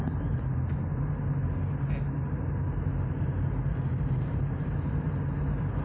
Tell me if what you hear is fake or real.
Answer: real